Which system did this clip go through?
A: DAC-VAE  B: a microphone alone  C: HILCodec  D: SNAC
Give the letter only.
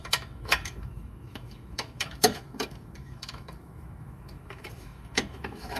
A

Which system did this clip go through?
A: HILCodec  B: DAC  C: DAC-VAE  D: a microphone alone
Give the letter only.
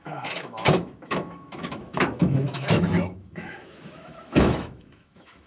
C